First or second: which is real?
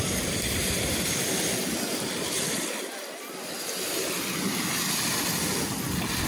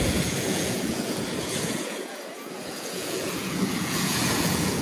first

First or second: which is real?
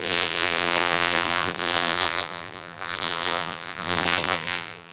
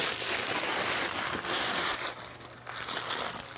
second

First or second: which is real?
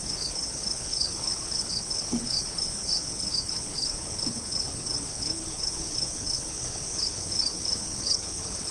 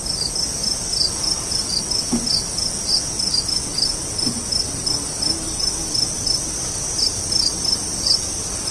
second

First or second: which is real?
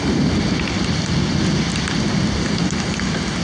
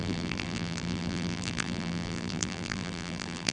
first